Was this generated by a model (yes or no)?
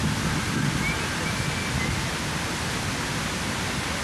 no